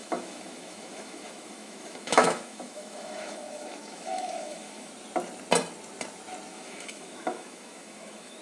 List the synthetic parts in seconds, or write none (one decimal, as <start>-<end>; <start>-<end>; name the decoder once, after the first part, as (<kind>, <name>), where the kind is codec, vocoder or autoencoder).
0.0-4.9 (autoencoder, DAC-VAE); 6.5-8.4